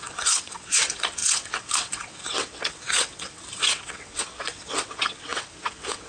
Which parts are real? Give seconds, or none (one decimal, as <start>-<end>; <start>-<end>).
none